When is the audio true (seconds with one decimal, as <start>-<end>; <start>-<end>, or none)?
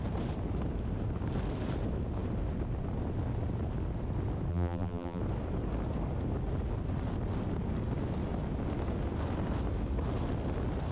0.0-4.5; 5.2-10.9